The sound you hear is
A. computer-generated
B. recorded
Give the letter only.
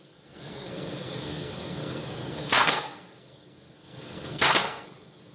A